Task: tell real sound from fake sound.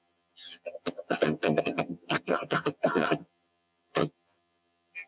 fake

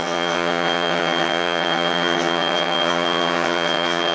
fake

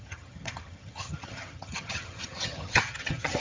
fake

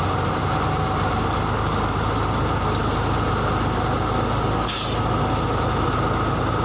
real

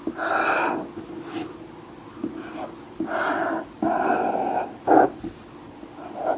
real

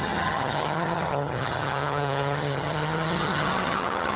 fake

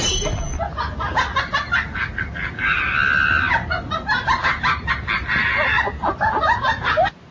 real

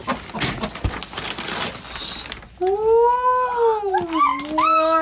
real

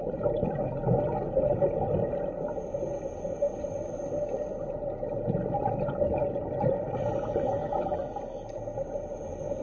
real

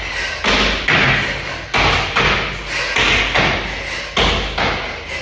real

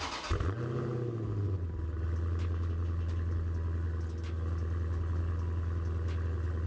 real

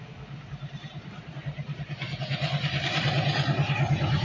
real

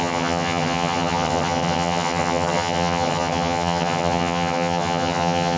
fake